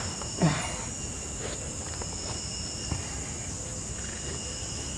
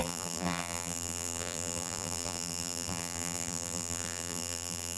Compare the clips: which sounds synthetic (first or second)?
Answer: second